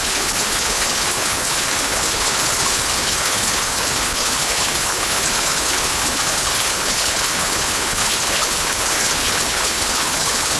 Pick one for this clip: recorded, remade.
remade